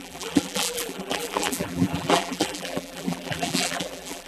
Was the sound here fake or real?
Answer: fake